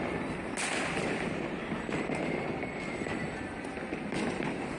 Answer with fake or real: real